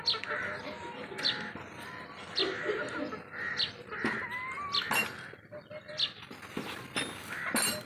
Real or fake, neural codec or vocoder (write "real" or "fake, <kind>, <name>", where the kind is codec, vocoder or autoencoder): real